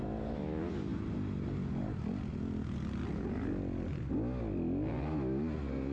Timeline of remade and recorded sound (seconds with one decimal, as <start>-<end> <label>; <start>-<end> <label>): 0.0-5.9 recorded